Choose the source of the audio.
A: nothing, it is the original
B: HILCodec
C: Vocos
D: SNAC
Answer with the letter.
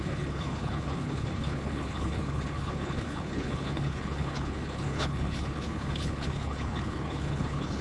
B